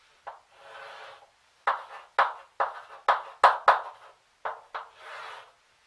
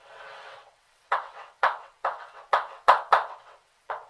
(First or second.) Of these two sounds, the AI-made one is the second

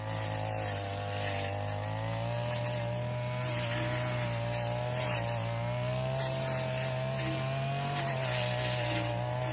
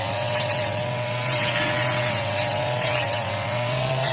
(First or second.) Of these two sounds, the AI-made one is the second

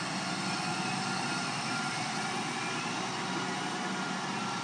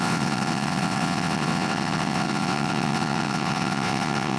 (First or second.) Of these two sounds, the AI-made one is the second